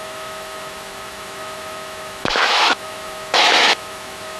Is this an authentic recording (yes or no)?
no